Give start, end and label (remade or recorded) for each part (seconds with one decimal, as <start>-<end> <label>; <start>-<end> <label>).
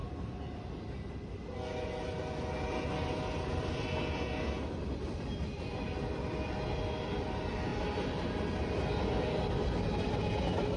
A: 0.0-10.8 recorded